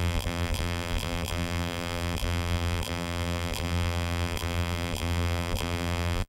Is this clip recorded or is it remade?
remade